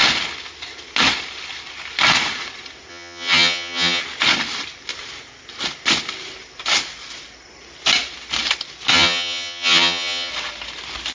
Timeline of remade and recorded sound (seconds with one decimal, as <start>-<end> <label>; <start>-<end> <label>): 0.0-2.9 recorded; 2.9-4.0 remade; 4.0-8.9 recorded; 8.9-10.3 remade; 10.3-11.1 recorded